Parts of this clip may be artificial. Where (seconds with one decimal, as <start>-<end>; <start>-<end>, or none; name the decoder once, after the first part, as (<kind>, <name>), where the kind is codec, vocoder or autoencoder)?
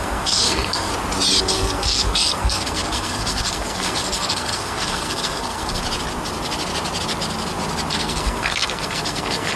0.0-0.9 (codec, SNAC); 1.4-5.8; 7.9-9.6